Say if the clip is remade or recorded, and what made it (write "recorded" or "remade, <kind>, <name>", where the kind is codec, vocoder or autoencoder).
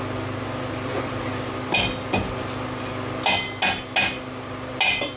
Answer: recorded